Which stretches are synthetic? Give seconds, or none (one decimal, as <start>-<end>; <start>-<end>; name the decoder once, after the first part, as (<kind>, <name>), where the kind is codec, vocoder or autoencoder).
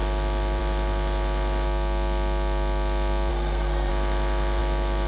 3.3-3.9 (codec, SNAC)